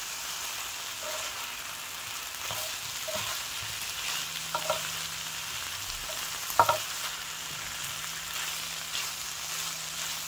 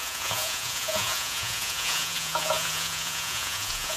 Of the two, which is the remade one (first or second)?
second